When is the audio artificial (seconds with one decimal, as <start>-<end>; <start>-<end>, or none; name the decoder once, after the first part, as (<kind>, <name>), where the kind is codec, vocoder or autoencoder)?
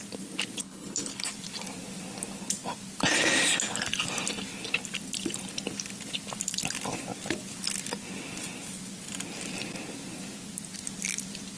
0.6-1.3 (codec, HILCodec)